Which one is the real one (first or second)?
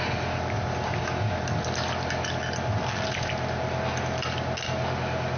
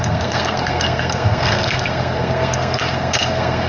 first